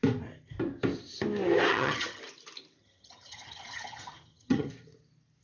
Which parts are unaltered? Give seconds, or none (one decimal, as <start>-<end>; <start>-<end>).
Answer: 0.0-1.7; 2.2-2.8; 4.7-5.4